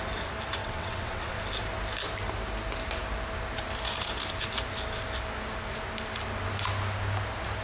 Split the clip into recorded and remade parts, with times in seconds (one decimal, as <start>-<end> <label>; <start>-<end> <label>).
0.0-0.6 recorded; 0.6-1.4 remade; 1.4-7.6 recorded